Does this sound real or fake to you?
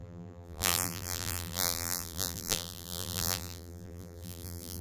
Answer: fake